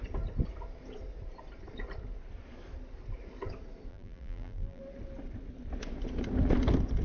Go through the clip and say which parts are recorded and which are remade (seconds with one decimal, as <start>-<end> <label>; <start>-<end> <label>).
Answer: 0.0-3.9 recorded; 3.9-4.8 remade; 4.8-7.0 recorded